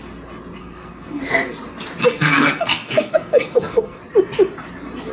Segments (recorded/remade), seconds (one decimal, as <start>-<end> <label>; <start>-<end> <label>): 0.0-0.6 recorded; 0.6-1.2 remade; 1.2-2.0 recorded; 2.0-4.0 remade; 4.0-5.1 recorded